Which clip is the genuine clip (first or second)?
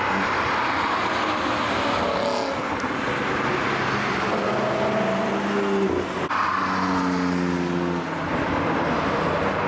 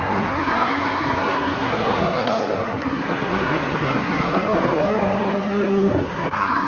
first